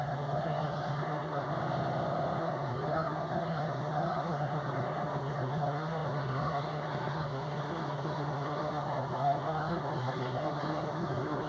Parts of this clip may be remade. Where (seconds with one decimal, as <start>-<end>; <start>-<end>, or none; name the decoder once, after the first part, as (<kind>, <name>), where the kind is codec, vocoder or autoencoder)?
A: 0.0-1.5 (codec, SNAC); 2.4-11.5